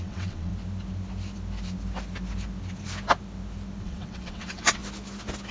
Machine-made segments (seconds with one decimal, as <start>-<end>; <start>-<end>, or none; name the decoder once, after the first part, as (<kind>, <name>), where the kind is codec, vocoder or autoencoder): 0.0-0.5 (vocoder, WaveNeXt); 3.8-4.8